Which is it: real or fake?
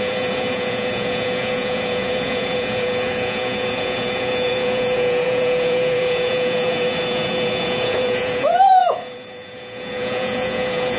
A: fake